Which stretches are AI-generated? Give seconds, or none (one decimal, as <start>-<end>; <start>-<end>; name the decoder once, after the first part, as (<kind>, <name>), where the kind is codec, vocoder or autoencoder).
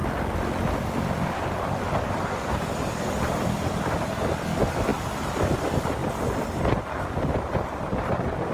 0.0-6.0 (vocoder, BigVGAN v2); 6.6-8.5